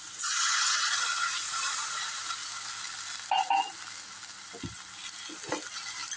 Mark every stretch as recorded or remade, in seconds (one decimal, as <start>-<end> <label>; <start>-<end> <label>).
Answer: 0.0-2.4 remade; 2.4-6.2 recorded